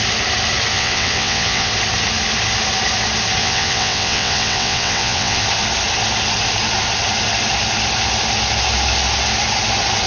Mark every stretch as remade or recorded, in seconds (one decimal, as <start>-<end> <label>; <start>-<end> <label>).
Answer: 0.0-0.7 recorded; 0.7-1.7 remade; 1.7-3.4 recorded; 3.4-5.4 remade; 5.4-10.1 recorded